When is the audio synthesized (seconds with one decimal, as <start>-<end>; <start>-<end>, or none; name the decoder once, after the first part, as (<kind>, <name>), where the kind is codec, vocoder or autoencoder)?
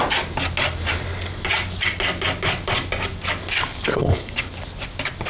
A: 4.0-4.5 (codec, DAC)